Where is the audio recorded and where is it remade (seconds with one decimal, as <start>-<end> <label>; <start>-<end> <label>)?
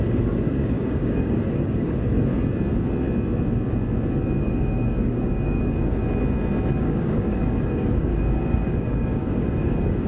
0.0-2.3 remade; 2.3-4.4 recorded; 4.4-6.0 remade; 6.0-6.8 recorded; 6.8-10.1 remade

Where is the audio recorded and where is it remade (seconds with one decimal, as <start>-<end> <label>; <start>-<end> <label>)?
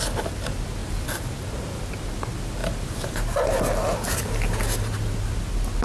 0.0-2.6 recorded; 2.6-3.6 remade; 3.6-5.8 recorded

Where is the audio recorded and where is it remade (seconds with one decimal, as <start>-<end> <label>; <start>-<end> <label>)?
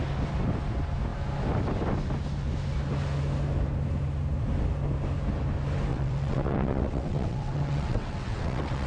0.0-5.9 recorded; 5.9-8.9 remade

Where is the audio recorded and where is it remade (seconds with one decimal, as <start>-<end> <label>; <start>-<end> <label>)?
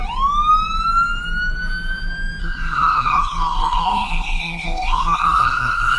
0.0-2.4 recorded; 2.4-6.0 remade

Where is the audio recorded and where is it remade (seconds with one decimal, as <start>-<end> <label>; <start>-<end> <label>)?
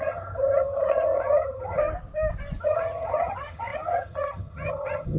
0.0-1.8 remade; 1.8-2.6 recorded; 2.6-5.2 remade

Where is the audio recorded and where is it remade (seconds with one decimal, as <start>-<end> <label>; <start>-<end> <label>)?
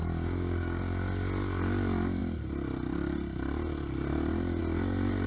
0.0-0.8 remade; 0.8-5.3 recorded